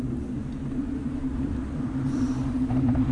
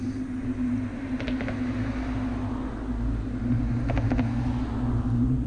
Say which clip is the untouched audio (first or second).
second